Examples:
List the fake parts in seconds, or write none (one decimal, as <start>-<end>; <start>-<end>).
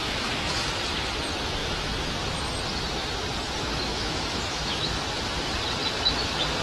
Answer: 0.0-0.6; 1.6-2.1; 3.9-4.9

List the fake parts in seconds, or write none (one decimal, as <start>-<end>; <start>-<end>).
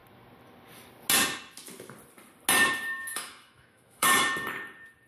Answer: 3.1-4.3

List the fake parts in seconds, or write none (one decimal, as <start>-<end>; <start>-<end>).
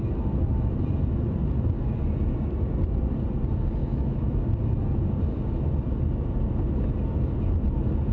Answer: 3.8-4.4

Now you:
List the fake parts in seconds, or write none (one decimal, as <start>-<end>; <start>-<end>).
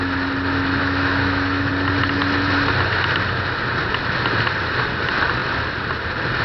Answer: 0.8-1.7